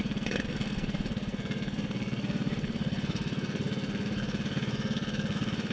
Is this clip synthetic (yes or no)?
yes